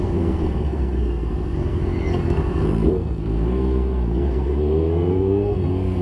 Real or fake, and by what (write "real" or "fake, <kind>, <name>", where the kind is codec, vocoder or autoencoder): fake, codec, SNAC